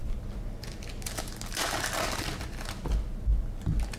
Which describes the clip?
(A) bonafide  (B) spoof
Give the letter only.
A